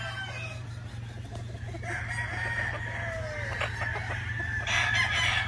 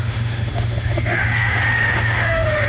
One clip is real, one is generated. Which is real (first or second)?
first